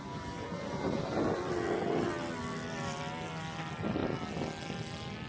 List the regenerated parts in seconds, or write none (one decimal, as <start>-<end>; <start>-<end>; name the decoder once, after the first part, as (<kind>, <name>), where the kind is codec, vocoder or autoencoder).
0.0-4.0 (vocoder, BigVGAN v2)